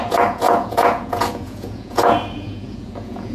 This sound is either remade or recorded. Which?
remade